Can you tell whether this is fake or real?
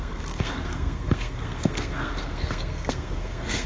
fake